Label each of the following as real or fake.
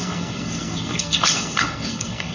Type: fake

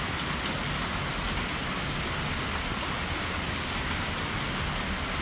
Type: real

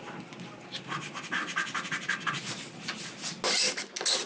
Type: real